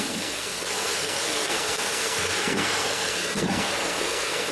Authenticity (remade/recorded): remade